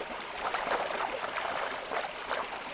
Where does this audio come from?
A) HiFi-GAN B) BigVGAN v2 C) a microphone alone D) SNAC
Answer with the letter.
C